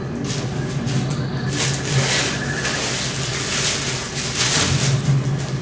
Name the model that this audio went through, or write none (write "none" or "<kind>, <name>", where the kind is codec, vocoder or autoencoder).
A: none